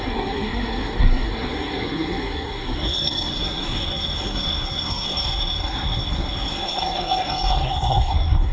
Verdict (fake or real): fake